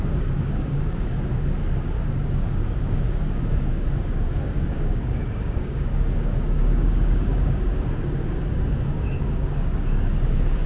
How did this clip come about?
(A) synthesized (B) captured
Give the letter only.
A